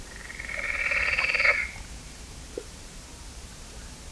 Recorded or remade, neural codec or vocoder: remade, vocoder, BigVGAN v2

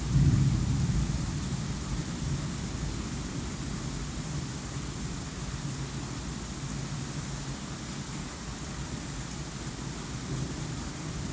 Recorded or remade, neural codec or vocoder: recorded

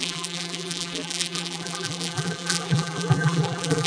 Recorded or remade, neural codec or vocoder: remade, vocoder, BigVGAN v2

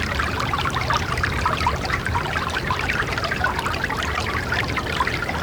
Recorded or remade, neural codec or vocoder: remade, vocoder, BigVGAN v2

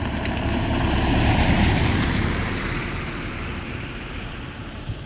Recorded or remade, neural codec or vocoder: remade, vocoder, BigVGAN v2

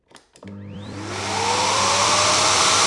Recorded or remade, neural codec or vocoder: remade, vocoder, BigVGAN v2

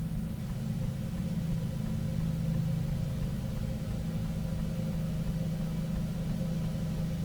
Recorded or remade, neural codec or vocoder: recorded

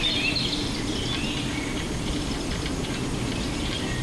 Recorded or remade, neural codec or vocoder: recorded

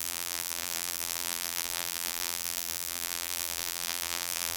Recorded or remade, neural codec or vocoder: remade, vocoder, BigVGAN v2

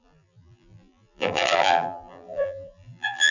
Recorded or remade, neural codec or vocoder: remade, vocoder, BigVGAN v2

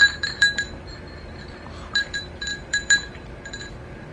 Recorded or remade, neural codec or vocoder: remade, vocoder, BigVGAN v2